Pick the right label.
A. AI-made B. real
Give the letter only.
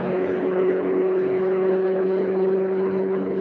A